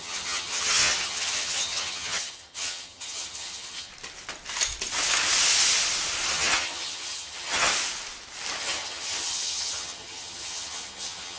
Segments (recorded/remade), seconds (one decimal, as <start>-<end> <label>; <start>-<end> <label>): 0.0-3.9 remade; 3.9-6.3 recorded; 6.3-7.7 remade; 7.7-8.6 recorded; 8.6-11.4 remade